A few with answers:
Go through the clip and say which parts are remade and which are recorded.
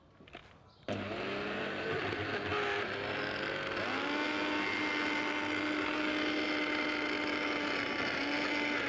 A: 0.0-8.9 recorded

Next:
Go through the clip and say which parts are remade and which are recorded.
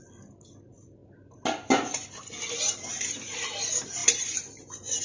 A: 0.0-5.0 recorded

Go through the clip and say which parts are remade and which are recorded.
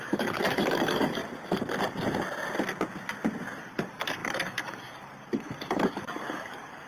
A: 0.0-1.2 remade; 1.2-3.6 recorded; 3.6-6.9 remade